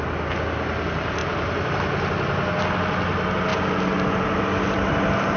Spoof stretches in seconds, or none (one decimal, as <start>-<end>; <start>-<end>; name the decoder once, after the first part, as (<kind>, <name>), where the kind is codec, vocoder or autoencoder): 1.2-1.7 (vocoder, BigVGAN v2)